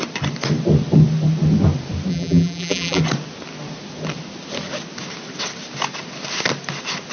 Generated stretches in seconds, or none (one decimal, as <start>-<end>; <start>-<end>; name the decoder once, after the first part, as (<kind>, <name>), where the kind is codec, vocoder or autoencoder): 2.1-3.0 (vocoder, BigVGAN v2)